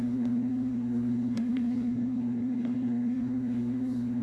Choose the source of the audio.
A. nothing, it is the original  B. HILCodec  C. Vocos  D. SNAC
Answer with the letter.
D